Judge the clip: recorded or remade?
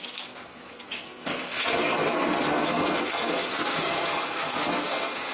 remade